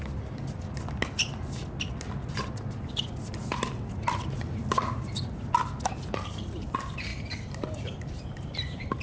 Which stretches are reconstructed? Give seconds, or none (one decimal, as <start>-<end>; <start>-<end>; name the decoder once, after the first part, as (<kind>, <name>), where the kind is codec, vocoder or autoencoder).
none